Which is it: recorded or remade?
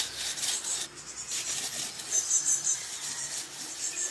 recorded